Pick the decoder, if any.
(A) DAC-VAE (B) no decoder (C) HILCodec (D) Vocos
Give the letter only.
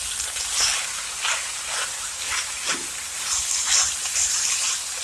B